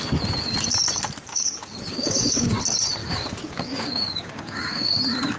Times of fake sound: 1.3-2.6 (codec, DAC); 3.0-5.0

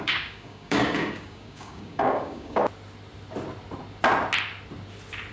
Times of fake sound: 0.0-2.6 (codec, DAC)